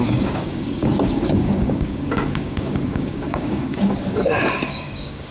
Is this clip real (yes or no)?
no